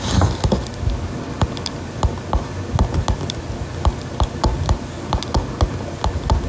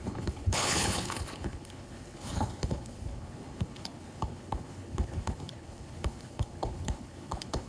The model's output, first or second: second